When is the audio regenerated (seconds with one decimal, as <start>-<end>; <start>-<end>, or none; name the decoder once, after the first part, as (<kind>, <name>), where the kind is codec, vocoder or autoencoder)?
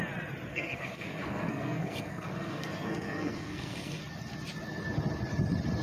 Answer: 0.5-4.0 (codec, SNAC)